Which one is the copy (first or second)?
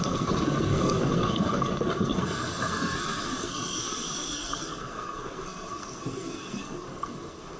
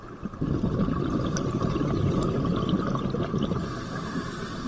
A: first